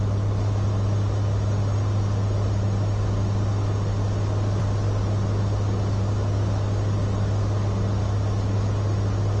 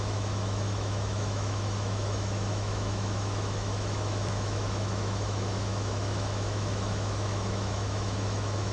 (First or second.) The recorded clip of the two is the first